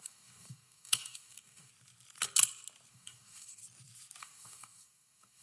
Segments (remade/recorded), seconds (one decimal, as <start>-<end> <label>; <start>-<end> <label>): 0.0-1.7 remade; 1.7-2.9 recorded; 2.9-3.6 remade; 3.6-4.2 recorded; 4.2-5.4 remade